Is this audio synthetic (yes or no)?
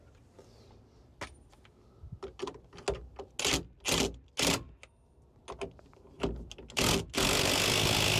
no